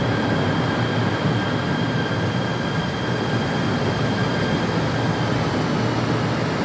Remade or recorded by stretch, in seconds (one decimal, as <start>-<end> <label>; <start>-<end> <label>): 0.0-6.6 recorded